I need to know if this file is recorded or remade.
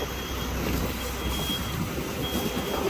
recorded